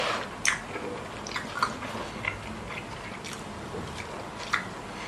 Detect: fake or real real